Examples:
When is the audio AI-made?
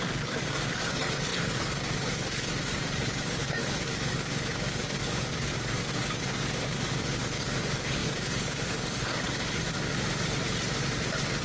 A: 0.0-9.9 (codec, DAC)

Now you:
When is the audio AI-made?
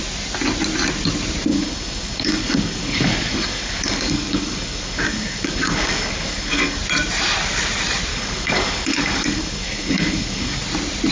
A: 1.5-6.8 (codec, DAC); 8.1-10.6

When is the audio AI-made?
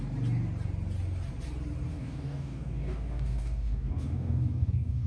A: 1.9-5.1 (codec, DAC)